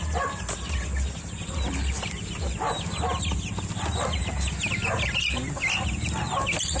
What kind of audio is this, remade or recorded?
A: recorded